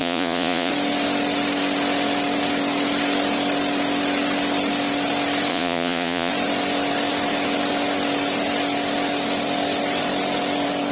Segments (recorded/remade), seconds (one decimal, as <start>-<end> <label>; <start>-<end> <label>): 0.0-0.7 remade; 0.7-5.5 recorded; 5.5-6.3 remade; 6.3-10.9 recorded